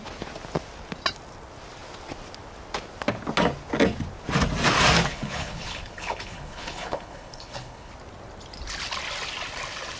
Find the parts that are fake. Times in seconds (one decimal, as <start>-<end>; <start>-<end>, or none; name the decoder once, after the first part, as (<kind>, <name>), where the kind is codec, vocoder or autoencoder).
5.1-7.9 (codec, HILCodec)